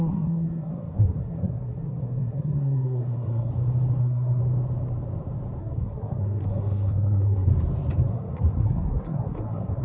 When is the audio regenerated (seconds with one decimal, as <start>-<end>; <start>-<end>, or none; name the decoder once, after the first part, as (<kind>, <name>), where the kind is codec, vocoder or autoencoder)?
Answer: 0.0-3.5 (codec, SNAC); 4.0-4.4; 5.6-7.5; 8.1-9.8